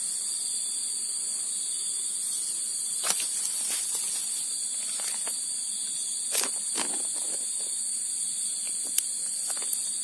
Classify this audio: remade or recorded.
recorded